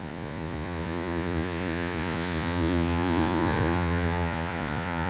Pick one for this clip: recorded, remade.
remade